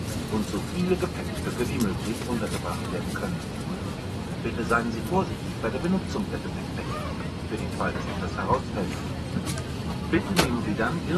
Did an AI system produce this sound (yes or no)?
no